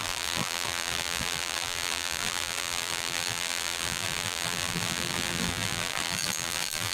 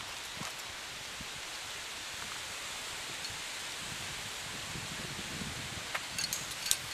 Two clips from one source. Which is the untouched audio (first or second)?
second